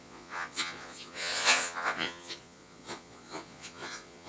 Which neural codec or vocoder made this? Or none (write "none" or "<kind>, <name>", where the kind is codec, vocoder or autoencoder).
vocoder, Vocos